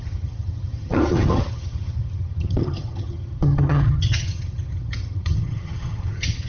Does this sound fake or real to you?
fake